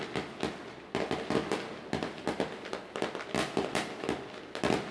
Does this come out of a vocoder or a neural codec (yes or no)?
no